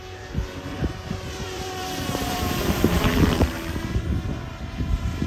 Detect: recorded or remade remade